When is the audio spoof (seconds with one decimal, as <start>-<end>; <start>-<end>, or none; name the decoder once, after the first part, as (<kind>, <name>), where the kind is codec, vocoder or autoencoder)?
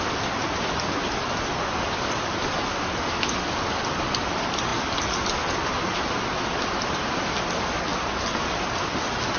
none